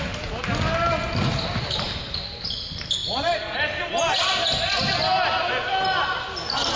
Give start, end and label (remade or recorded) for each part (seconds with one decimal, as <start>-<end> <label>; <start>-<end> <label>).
0.0-6.8 recorded